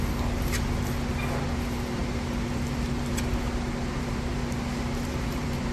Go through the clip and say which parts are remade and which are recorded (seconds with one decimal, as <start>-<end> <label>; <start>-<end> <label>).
0.0-5.1 recorded; 5.1-5.7 remade